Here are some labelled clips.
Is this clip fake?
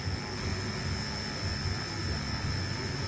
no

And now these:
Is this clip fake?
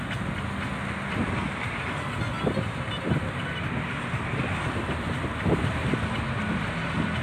no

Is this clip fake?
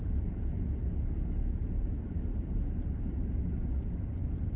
no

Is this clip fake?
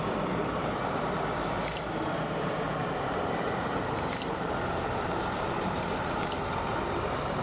yes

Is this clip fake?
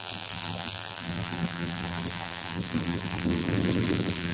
yes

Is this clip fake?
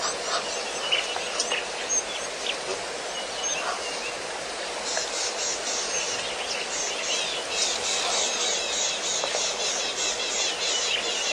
no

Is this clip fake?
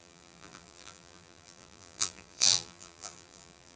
yes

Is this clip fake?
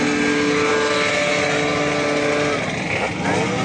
no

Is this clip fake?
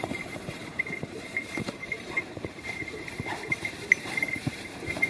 yes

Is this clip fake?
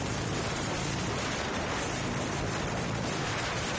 yes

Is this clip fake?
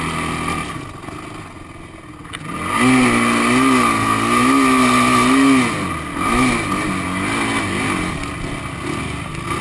no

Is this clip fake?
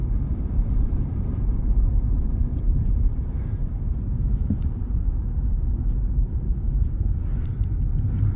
yes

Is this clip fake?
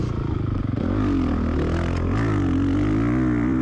yes